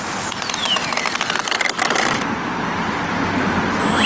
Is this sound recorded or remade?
recorded